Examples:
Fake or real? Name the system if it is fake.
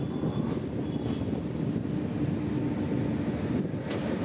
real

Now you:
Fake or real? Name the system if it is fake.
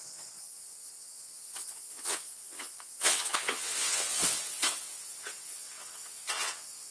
fake, vocoder, WaveNeXt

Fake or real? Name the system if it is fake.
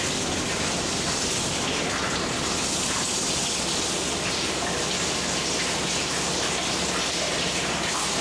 real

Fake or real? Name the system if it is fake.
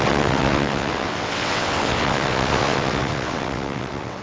fake, vocoder, WaveNeXt